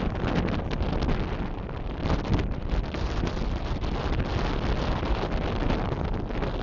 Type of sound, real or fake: real